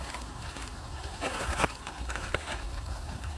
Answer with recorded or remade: remade